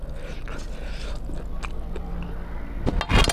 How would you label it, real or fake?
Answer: real